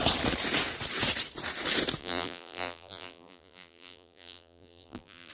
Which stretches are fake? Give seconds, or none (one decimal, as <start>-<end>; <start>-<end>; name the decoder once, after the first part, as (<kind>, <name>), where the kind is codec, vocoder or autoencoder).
2.0-5.3 (vocoder, BigVGAN v2)